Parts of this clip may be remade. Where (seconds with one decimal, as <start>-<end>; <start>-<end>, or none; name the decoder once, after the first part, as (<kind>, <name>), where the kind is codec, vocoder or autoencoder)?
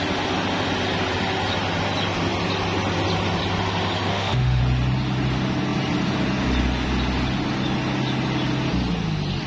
4.1-4.6 (autoencoder, DAC-VAE)